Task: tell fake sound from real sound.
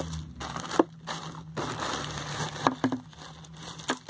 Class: real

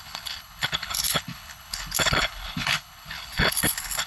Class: fake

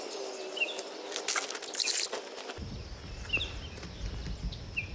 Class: real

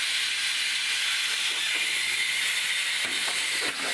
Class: fake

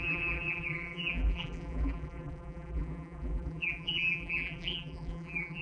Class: fake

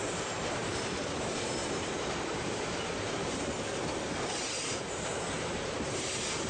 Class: fake